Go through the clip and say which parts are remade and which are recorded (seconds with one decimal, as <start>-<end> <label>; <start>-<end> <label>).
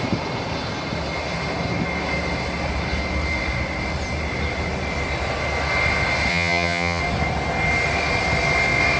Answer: 0.0-6.3 recorded; 6.3-7.0 remade; 7.0-9.0 recorded